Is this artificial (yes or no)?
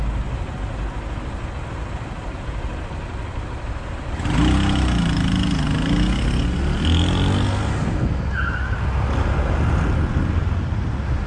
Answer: no